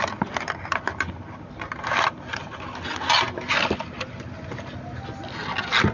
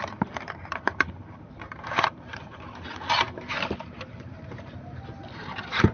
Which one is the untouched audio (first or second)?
first